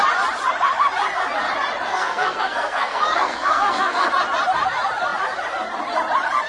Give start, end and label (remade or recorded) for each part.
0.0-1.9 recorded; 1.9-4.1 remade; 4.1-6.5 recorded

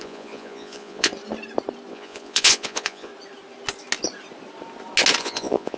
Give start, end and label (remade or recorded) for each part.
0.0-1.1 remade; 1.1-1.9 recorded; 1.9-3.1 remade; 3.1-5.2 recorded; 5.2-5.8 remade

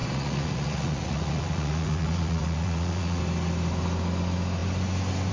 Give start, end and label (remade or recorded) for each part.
0.0-3.2 remade; 3.2-5.3 recorded

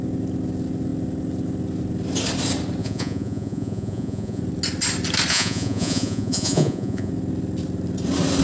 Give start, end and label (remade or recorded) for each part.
0.0-2.8 recorded; 2.8-4.4 remade; 4.4-5.3 recorded; 5.3-7.1 remade; 7.1-8.4 recorded

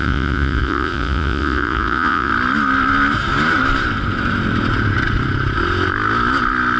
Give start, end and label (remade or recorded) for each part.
0.0-2.3 remade; 2.3-6.8 recorded